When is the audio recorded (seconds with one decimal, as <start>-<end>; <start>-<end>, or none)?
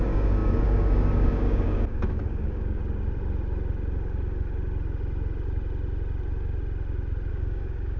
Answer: 2.8-7.3